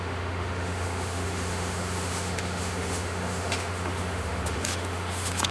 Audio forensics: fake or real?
fake